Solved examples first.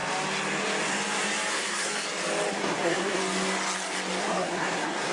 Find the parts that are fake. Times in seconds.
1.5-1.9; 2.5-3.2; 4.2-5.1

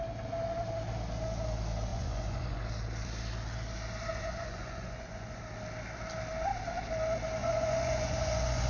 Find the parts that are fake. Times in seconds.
1.9-2.6; 4.1-5.4; 7.4-8.7

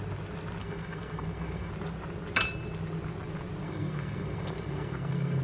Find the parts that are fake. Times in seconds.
0.6-1.7; 3.6-5.4

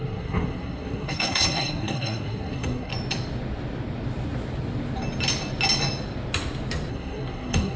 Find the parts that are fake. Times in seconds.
0.0-2.9; 6.9-7.8

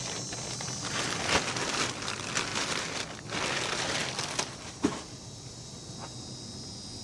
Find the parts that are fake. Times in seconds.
none

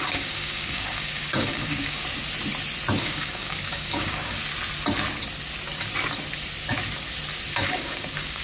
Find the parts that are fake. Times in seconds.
0.0-2.0; 3.0-4.4; 7.6-8.4